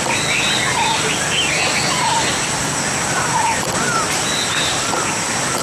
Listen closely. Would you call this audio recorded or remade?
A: recorded